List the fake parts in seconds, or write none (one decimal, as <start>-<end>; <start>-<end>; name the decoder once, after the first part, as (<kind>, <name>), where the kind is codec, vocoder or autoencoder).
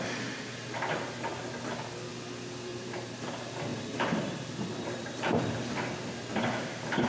2.7-3.3 (vocoder, BigVGAN v2); 3.7-5.7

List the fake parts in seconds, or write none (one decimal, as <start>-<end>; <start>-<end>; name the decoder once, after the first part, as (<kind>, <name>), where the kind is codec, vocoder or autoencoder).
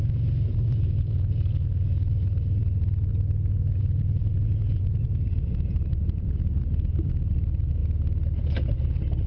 0.0-3.1 (vocoder, BigVGAN v2); 3.8-7.8; 8.4-9.3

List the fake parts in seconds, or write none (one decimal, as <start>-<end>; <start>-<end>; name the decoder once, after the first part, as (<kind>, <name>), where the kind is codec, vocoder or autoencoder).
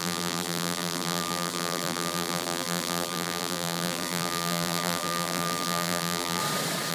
0.0-6.4 (vocoder, BigVGAN v2)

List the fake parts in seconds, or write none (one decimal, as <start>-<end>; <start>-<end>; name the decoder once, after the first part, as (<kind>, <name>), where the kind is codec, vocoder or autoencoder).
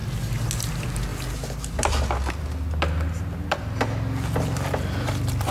none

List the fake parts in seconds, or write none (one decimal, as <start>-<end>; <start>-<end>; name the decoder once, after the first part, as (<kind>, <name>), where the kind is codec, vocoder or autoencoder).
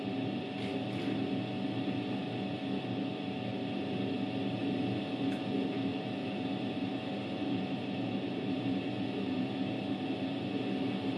5.9-10.5 (vocoder, BigVGAN v2)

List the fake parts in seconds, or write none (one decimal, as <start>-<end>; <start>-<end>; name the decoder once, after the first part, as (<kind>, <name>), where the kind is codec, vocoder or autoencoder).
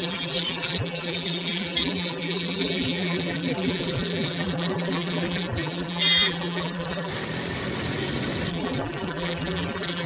0.0-7.1 (vocoder, BigVGAN v2); 8.5-10.1